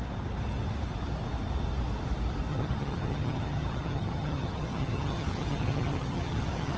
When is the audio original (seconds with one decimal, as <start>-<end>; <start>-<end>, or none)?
0.0-2.5